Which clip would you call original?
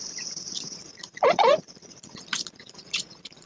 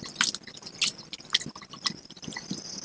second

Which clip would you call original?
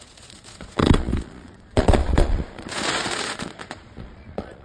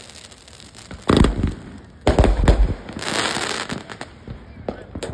second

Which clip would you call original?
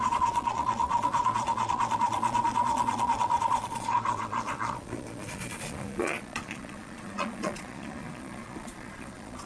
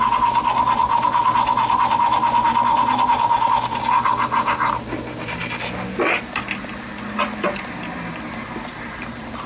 second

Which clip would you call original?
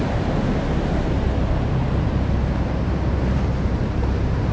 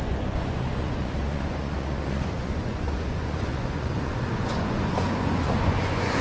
first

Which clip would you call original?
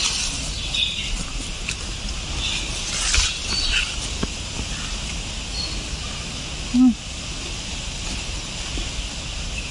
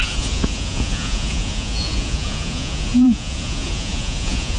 first